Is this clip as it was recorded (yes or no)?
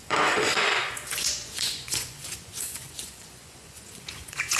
no